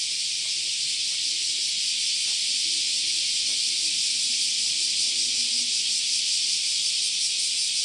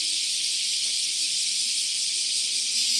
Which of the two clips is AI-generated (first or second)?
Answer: second